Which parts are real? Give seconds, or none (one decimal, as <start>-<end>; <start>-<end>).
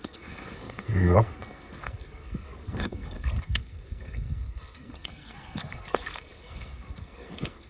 none